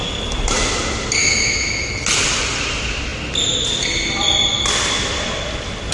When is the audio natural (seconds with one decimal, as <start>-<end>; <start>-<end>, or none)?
0.0-1.2; 1.9-5.9